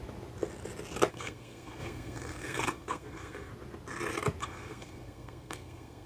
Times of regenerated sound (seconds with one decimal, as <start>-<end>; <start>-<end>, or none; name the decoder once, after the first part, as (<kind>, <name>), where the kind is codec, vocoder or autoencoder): 1.1-3.5 (codec, SNAC); 4.4-6.1

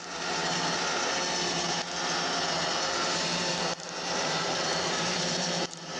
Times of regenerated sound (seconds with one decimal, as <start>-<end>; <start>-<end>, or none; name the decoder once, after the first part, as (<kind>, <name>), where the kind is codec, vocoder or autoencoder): 3.3-6.0 (vocoder, BigVGAN v2)

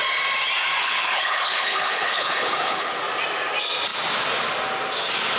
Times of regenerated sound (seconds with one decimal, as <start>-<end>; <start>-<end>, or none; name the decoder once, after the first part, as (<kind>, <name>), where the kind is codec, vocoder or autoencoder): 0.8-2.9 (codec, HILCodec)

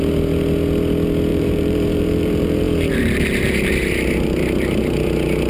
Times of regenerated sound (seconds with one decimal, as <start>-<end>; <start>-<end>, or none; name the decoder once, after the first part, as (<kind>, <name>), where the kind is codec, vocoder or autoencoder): 1.3-3.7 (vocoder, BigVGAN v2)

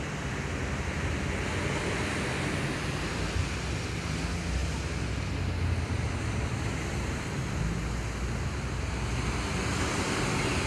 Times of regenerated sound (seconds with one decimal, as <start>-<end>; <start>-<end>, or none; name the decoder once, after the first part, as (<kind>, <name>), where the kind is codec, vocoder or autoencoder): none

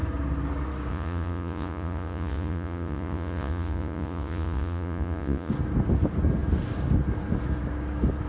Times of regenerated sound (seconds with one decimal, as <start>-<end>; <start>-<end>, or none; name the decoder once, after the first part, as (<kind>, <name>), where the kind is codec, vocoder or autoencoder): 0.9-5.5 (vocoder, Vocos)

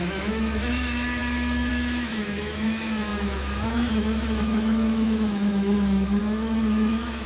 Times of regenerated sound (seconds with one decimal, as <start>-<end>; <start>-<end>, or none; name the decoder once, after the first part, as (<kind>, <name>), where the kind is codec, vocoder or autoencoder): 0.0-7.3 (autoencoder, DAC-VAE)

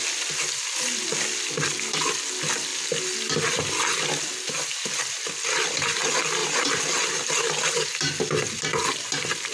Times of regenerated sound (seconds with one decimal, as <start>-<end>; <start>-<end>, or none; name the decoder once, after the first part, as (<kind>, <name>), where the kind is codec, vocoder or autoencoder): 6.4-8.1 (vocoder, BigVGAN v2); 8.8-9.5